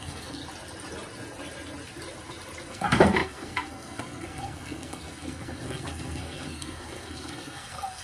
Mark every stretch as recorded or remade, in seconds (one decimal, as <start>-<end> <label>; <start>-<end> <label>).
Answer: 0.0-0.4 remade; 0.4-2.7 recorded; 2.7-8.0 remade